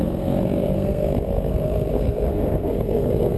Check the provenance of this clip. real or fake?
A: fake